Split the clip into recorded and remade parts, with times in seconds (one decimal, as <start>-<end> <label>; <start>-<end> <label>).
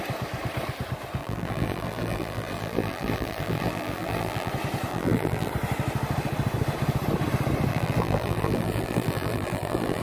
0.0-1.2 recorded; 1.2-4.5 remade; 4.5-4.9 recorded; 4.9-5.5 remade; 5.5-7.7 recorded; 7.7-10.0 remade